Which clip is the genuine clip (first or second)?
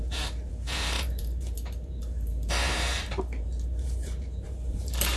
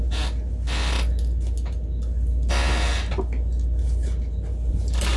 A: second